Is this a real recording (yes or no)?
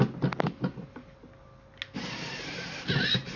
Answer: yes